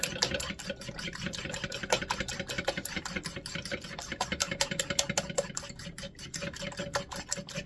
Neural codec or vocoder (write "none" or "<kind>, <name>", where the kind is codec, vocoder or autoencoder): none